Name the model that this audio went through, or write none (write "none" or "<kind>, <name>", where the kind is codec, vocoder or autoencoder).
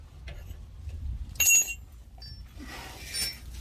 none